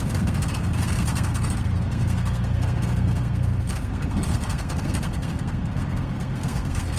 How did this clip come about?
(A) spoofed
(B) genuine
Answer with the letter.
A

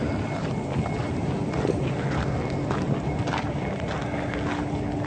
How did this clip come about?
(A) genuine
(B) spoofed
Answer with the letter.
A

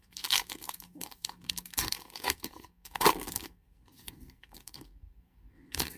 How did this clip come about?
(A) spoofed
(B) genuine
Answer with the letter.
A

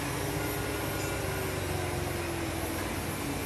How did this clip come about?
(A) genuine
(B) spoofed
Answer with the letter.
A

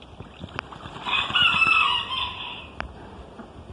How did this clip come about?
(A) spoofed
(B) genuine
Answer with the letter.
B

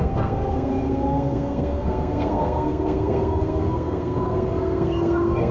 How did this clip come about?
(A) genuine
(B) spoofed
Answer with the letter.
B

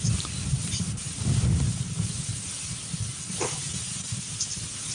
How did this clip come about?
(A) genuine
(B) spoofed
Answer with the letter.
A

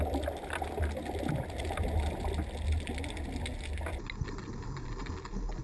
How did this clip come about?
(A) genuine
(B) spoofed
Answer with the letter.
A